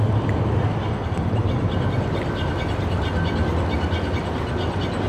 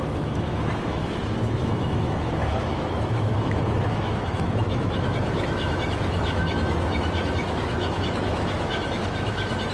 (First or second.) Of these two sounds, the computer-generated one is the second